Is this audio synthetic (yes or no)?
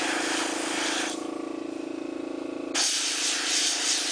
no